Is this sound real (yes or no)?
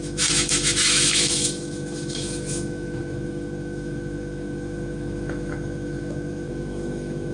no